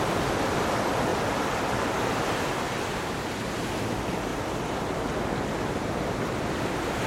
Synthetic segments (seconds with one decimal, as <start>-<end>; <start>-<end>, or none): 0.0-1.1; 3.9-7.1